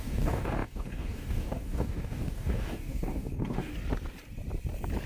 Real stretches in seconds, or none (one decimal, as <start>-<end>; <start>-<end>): 3.7-5.1